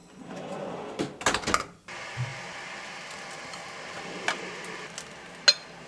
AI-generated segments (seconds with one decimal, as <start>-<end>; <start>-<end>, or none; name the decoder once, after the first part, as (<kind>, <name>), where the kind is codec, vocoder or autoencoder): 0.0-0.9 (vocoder, Vocos)